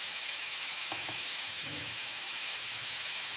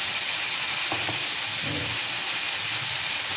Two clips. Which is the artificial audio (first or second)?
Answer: first